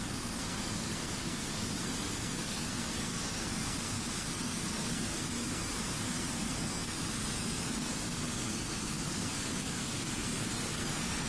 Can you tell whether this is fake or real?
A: fake